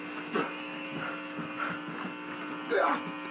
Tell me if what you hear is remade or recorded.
recorded